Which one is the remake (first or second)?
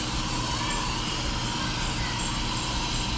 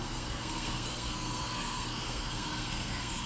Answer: second